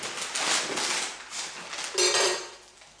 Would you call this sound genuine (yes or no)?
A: yes